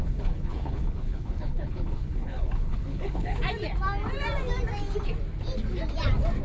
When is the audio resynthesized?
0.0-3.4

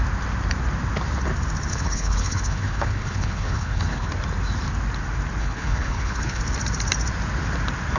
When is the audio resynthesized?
1.7-4.1; 5.4-6.4

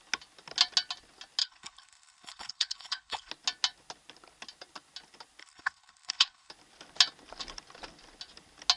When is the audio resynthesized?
1.4-3.3; 5.4-6.5

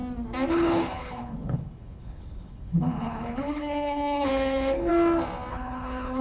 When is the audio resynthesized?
0.5-4.9; 5.5-6.2

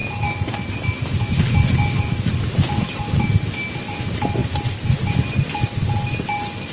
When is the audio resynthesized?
none